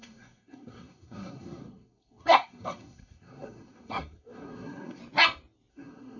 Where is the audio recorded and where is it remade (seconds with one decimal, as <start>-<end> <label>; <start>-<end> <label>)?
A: 0.0-5.0 remade; 5.0-5.7 recorded; 5.7-6.2 remade